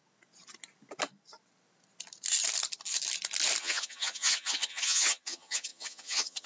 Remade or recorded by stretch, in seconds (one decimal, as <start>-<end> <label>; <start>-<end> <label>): 0.0-3.6 recorded; 3.6-6.5 remade